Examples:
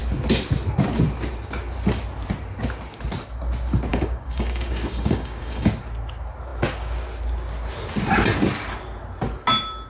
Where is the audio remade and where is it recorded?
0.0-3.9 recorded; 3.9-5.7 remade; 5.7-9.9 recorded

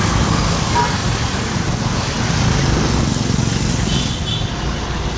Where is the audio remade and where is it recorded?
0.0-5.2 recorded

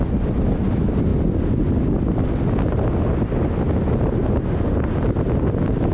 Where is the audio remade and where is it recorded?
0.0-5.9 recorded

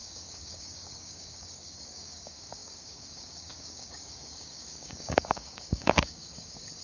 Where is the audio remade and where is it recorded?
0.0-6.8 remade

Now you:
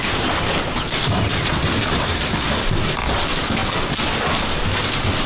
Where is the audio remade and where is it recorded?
0.0-5.3 recorded